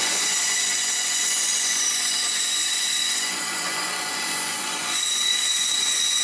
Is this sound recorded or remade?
remade